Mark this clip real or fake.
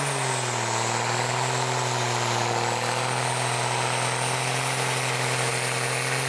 real